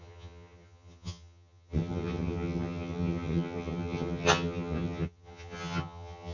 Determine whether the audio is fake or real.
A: fake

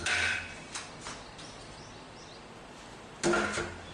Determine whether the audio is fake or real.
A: real